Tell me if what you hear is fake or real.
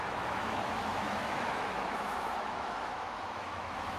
fake